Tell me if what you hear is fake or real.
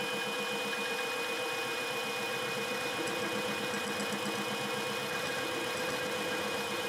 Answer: real